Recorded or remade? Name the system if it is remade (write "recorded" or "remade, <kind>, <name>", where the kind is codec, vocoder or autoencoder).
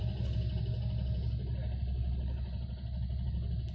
recorded